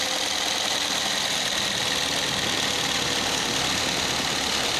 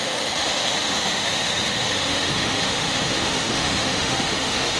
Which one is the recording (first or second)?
first